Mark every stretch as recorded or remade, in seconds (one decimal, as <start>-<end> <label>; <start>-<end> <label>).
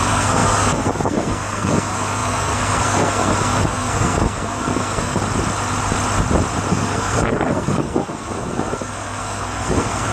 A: 0.0-5.2 remade; 5.2-6.7 recorded; 6.7-10.1 remade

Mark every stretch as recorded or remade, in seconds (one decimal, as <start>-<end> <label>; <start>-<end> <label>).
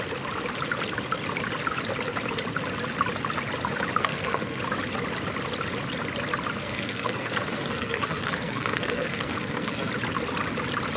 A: 0.0-4.0 recorded; 4.0-4.6 remade; 4.6-6.6 recorded; 6.6-9.9 remade; 9.9-11.0 recorded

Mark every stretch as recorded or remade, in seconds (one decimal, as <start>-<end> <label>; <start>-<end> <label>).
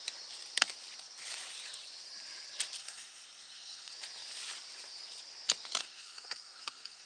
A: 0.0-2.8 recorded; 2.8-3.9 remade; 3.9-5.8 recorded; 5.8-7.1 remade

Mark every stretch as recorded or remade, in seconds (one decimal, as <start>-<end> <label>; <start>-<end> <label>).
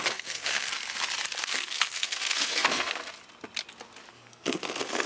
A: 0.0-0.7 remade; 0.7-1.4 recorded; 1.4-3.0 remade; 3.0-4.1 recorded; 4.1-5.1 remade